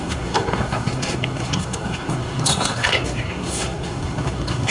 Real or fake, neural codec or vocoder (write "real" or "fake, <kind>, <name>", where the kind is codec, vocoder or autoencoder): fake, codec, SNAC